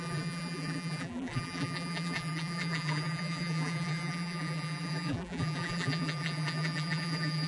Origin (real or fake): fake